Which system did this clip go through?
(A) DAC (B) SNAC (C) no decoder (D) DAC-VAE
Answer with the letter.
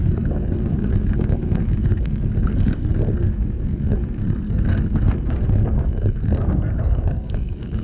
B